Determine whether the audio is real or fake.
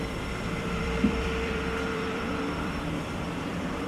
fake